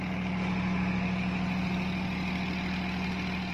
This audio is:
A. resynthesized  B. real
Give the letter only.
B